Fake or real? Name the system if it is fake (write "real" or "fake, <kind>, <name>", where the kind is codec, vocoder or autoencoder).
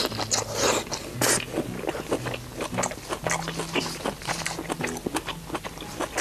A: real